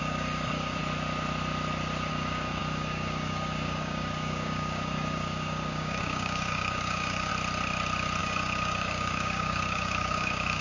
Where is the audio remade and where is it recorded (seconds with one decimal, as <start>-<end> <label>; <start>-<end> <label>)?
0.0-0.8 remade; 0.8-2.1 recorded; 2.1-7.3 remade; 7.3-8.2 recorded; 8.2-10.6 remade

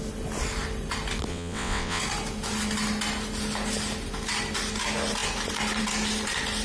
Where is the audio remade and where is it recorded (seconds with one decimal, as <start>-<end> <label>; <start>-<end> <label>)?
0.0-1.3 recorded; 1.3-2.0 remade; 2.0-6.6 recorded

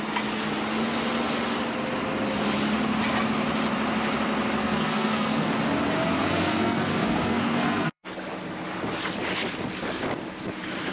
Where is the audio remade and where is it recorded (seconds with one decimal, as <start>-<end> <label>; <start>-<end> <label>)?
0.0-4.6 recorded; 4.6-5.5 remade; 5.5-6.2 recorded; 6.2-8.1 remade; 8.1-10.9 recorded

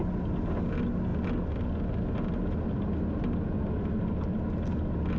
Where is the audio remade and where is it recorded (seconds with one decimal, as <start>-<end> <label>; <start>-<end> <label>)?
0.0-5.2 recorded

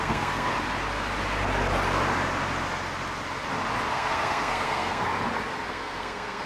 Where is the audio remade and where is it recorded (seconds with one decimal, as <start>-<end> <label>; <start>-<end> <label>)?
0.0-0.5 remade; 0.5-3.9 recorded; 3.9-5.1 remade; 5.1-5.7 recorded; 5.7-6.5 remade

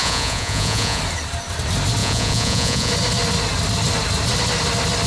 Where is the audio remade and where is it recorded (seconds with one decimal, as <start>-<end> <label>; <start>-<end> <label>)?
0.0-1.0 remade; 1.0-2.0 recorded; 2.0-2.9 remade; 2.9-5.1 recorded